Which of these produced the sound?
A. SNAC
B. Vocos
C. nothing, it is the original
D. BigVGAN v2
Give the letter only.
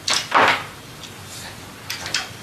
C